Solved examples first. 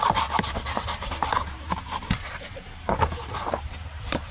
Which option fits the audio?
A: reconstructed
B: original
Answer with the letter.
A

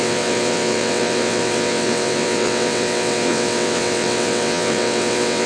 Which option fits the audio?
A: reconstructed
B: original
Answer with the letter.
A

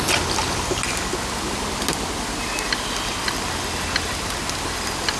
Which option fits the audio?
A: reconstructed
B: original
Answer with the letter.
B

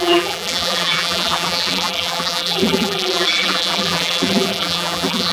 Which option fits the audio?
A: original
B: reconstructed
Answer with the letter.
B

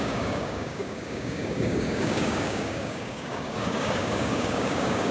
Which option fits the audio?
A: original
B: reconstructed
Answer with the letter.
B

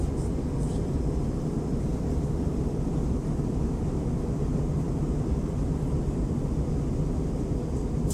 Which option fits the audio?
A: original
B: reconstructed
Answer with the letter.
A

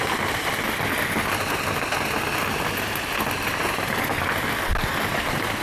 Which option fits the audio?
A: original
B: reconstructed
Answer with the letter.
A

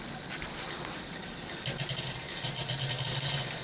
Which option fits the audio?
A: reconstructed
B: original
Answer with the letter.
B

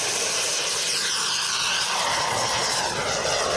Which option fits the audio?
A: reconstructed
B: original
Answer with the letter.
B